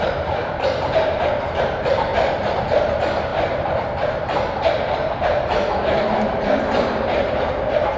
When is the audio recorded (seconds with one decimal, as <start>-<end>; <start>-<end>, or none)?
2.1-2.6; 3.3-4.7